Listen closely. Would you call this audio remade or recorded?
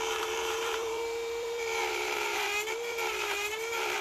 remade